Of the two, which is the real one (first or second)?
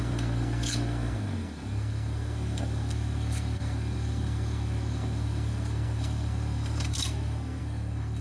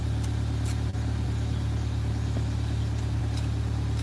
second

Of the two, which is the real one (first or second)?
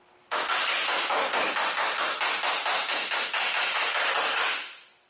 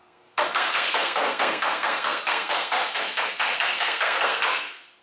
first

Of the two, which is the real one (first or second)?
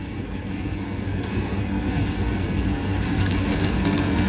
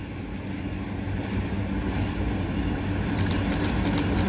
second